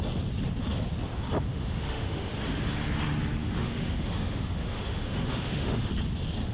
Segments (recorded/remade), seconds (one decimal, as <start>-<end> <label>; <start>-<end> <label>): 0.0-1.5 recorded; 1.5-2.3 remade; 2.3-3.4 recorded; 3.4-5.9 remade; 5.9-6.5 recorded

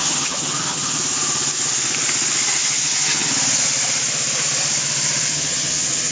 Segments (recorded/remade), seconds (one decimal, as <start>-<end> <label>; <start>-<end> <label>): 0.0-1.0 remade; 1.0-2.6 recorded; 2.6-3.3 remade; 3.3-5.3 recorded; 5.3-6.1 remade

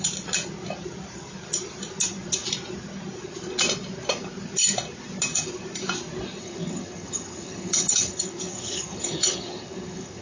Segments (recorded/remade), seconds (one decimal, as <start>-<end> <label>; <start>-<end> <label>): 0.0-6.4 recorded; 6.4-10.2 remade

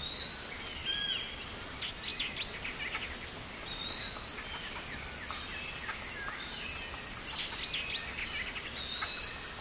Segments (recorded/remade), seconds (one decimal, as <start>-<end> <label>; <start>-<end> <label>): 0.0-9.6 recorded

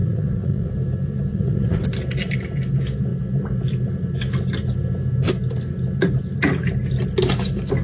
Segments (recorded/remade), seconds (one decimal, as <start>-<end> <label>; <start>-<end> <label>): 0.0-0.7 remade; 0.7-1.3 recorded; 1.3-1.8 remade; 1.8-7.8 recorded

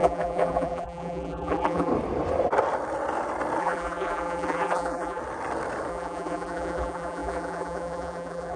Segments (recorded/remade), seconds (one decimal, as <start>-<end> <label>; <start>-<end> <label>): 0.0-1.9 remade; 1.9-3.6 recorded; 3.6-5.2 remade; 5.2-5.9 recorded; 5.9-8.6 remade